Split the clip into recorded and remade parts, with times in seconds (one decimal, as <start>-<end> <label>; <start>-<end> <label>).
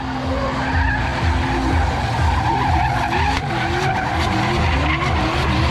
0.0-5.7 recorded